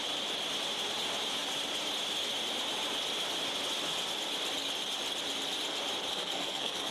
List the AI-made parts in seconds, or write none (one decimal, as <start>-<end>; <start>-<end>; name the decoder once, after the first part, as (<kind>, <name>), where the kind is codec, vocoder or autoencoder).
6.1-6.9 (codec, SNAC)